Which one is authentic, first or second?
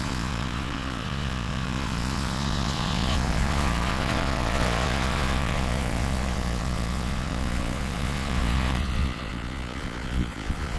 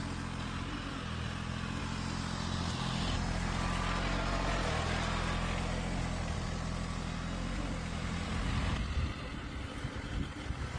second